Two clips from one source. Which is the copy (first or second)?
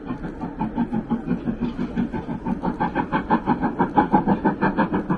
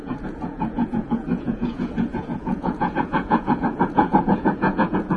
second